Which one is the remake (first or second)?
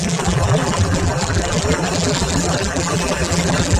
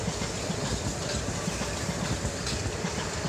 first